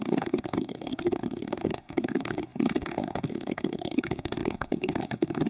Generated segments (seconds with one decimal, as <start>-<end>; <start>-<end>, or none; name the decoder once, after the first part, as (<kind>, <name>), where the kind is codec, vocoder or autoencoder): 0.0-5.5 (codec, SNAC)